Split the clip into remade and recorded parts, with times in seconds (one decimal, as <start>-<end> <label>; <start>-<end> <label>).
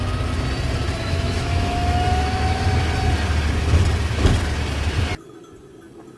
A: 0.0-1.0 recorded; 1.0-2.8 remade; 2.8-6.2 recorded